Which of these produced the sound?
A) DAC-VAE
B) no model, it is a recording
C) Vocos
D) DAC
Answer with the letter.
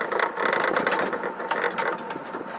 B